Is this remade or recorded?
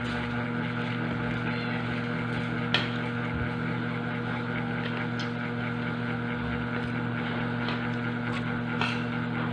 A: recorded